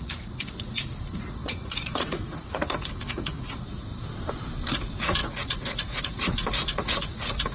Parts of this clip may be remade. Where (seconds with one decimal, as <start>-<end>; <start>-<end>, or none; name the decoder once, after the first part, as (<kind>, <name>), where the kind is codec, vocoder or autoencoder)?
0.0-3.9 (vocoder, Vocos); 4.7-7.5